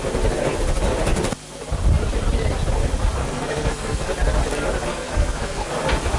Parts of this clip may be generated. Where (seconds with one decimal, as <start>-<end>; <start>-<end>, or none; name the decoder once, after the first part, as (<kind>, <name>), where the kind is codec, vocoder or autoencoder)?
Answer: 3.2-4.1 (codec, SNAC); 4.9-5.7